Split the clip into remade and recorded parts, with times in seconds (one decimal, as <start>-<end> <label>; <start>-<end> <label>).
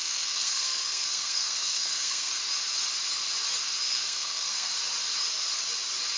0.0-2.3 remade; 2.3-3.9 recorded; 3.9-4.7 remade; 4.7-6.2 recorded